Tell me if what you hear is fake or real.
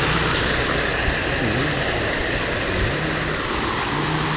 real